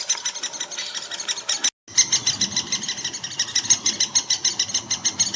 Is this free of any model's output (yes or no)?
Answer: yes